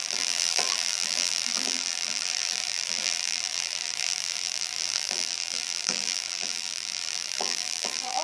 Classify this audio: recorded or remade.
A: remade